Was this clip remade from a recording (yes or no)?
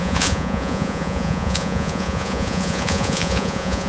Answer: yes